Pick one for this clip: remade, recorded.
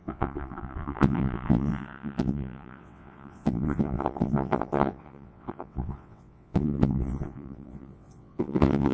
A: remade